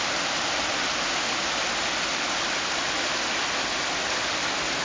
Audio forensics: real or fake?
real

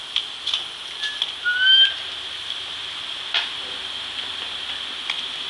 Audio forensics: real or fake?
real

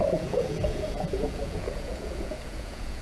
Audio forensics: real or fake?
fake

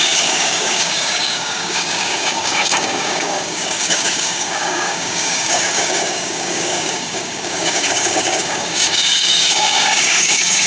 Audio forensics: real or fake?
fake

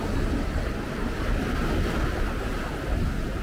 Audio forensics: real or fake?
real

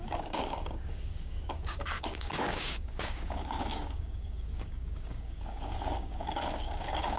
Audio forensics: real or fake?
fake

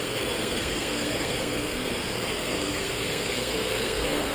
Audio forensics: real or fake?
fake